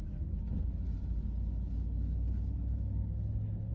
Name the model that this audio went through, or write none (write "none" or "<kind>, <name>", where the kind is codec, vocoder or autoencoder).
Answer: none